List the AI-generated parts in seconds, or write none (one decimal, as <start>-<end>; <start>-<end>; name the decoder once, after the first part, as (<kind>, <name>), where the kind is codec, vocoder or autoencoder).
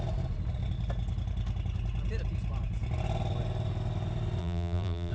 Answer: 4.4-5.1 (vocoder, BigVGAN v2)